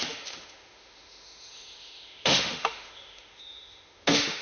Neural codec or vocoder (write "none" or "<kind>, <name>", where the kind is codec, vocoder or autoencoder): autoencoder, DAC-VAE